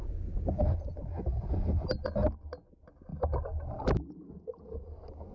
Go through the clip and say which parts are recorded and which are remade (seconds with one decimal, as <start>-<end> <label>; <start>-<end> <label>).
0.0-5.3 recorded